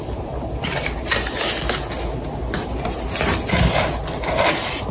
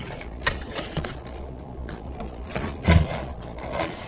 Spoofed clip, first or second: second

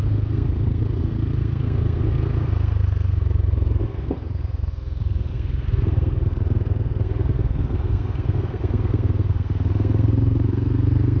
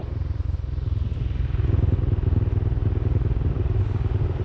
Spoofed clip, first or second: first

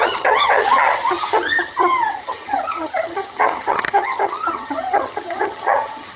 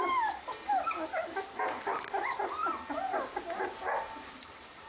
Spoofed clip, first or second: first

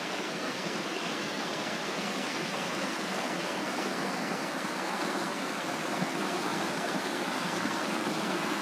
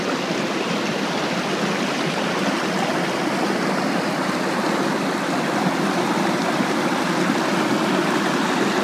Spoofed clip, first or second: first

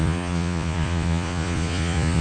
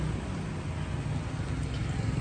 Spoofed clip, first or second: first